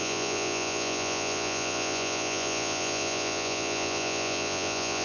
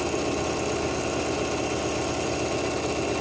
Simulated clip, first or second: first